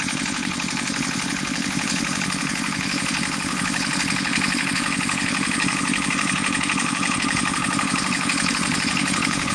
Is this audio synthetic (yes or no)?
yes